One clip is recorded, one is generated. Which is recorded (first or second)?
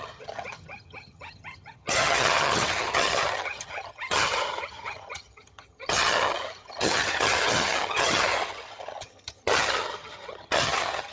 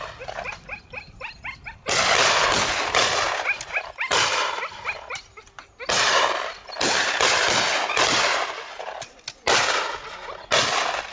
second